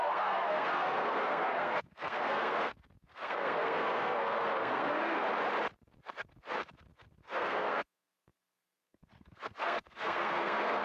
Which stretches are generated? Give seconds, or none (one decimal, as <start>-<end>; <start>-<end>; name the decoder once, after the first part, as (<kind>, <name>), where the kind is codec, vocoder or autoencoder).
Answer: 0.0-5.2 (codec, SNAC); 6.0-10.8